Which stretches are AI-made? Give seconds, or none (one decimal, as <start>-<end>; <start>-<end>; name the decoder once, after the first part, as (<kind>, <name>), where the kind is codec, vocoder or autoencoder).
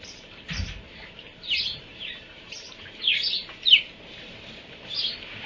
0.0-3.2 (vocoder, BigVGAN v2); 3.8-5.5